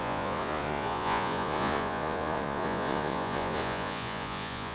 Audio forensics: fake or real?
fake